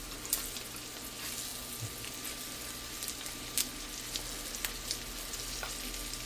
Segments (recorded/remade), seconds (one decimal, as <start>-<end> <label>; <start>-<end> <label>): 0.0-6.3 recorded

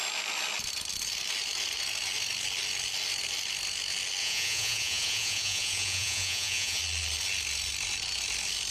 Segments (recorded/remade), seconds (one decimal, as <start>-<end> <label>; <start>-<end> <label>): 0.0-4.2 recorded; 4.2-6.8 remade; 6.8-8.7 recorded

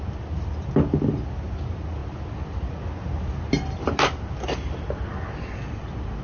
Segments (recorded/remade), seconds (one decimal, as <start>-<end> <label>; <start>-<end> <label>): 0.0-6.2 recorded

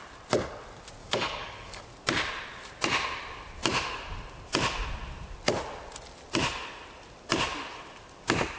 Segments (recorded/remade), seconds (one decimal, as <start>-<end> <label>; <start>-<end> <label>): 0.0-1.0 recorded; 1.0-1.8 remade; 1.8-8.6 recorded

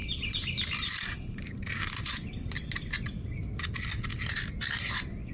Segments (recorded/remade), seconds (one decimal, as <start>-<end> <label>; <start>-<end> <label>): 0.0-5.3 recorded

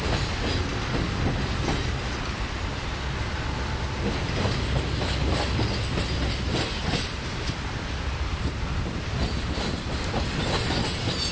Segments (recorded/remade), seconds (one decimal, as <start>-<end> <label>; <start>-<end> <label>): 0.0-6.8 recorded; 6.8-10.4 remade; 10.4-11.3 recorded